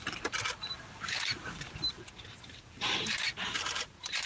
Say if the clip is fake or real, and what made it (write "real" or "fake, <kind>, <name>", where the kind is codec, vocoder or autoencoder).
fake, vocoder, BigVGAN v2